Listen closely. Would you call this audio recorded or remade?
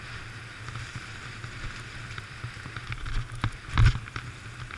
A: recorded